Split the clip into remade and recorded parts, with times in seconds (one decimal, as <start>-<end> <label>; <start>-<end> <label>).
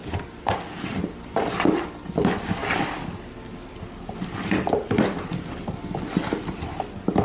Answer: 0.0-7.2 recorded